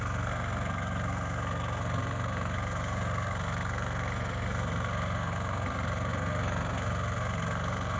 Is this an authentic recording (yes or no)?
no